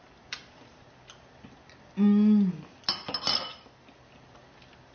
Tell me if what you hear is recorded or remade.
recorded